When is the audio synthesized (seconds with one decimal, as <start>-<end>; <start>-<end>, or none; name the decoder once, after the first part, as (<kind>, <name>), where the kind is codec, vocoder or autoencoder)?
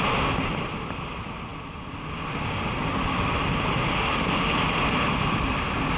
none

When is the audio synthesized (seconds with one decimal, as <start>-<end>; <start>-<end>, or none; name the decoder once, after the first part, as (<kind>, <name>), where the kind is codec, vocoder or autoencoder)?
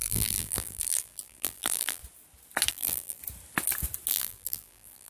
0.0-2.0 (vocoder, BigVGAN v2); 2.7-3.2; 4.1-5.1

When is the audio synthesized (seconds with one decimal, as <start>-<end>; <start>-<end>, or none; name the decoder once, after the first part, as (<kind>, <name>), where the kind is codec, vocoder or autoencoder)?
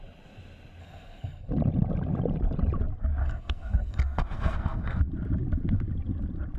0.8-1.5 (codec, SNAC); 3.2-5.0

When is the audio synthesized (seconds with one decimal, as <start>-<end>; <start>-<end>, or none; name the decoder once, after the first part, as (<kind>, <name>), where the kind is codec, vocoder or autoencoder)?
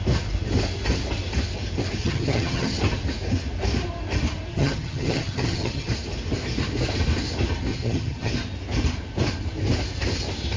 2.0-2.8 (vocoder, HiFi-GAN); 4.5-5.9; 7.7-8.3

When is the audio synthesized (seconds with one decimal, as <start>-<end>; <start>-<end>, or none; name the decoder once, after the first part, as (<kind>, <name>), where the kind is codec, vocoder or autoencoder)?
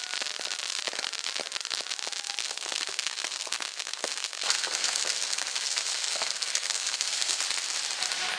2.4-7.4 (codec, SNAC)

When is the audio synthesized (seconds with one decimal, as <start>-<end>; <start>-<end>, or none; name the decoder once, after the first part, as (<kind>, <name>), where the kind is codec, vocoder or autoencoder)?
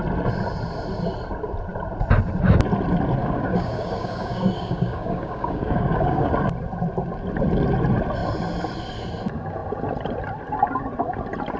3.2-6.3 (codec, DAC)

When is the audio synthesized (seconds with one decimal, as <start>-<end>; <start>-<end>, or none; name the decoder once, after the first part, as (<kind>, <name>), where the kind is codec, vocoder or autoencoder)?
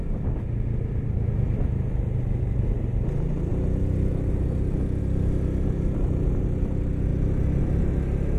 none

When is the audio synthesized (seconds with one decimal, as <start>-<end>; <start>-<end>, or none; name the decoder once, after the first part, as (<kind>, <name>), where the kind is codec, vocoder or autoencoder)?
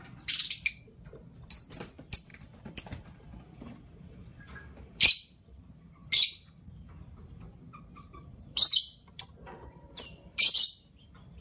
0.0-6.0 (vocoder, BigVGAN v2); 7.9-11.4